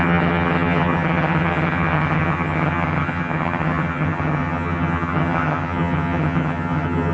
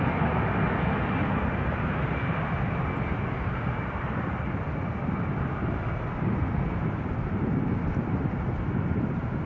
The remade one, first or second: first